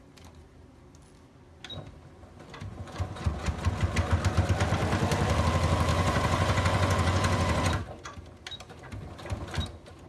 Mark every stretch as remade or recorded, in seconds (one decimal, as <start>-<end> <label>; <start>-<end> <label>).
0.0-2.7 recorded; 2.7-3.5 remade; 3.5-5.9 recorded; 5.9-7.7 remade; 7.7-10.1 recorded